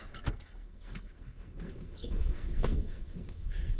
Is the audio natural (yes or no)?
no